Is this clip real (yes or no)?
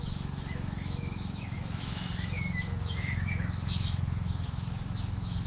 no